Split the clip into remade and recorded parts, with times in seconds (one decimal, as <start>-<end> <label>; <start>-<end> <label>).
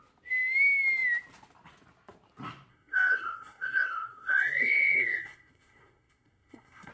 0.0-2.7 recorded; 2.7-6.9 remade